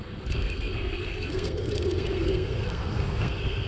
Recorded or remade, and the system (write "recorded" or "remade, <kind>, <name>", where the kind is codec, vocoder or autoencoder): remade, codec, SNAC